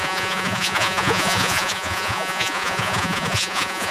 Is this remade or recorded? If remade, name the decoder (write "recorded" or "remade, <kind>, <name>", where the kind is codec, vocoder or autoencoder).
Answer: remade, vocoder, Vocos